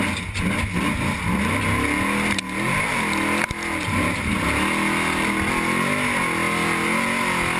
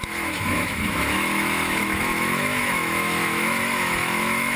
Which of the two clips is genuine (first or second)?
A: first